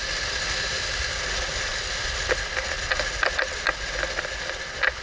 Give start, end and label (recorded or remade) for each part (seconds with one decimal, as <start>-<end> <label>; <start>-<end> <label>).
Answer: 0.0-5.0 recorded